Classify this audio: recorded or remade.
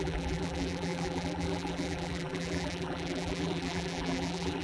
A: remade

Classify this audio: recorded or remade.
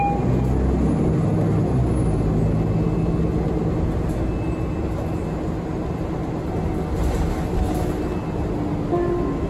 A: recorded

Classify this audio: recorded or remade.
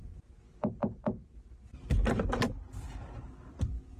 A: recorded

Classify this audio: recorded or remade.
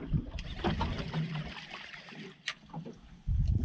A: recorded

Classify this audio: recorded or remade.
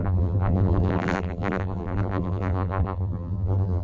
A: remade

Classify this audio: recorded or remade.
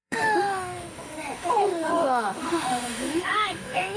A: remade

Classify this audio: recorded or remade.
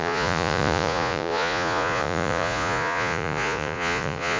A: remade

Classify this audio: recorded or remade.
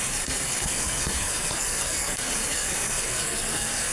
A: remade